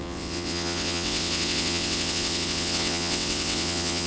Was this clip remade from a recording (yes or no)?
yes